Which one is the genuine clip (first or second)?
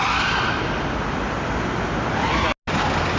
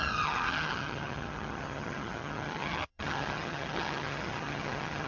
first